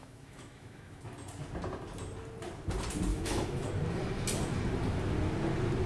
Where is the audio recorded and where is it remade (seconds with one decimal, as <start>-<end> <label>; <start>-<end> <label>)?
0.0-1.0 remade; 1.0-3.1 recorded; 3.1-3.7 remade; 3.7-5.9 recorded